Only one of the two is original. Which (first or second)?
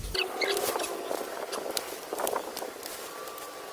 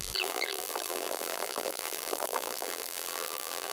first